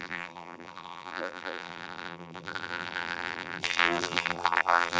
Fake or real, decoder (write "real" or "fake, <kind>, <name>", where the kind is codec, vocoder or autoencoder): fake, vocoder, BigVGAN v2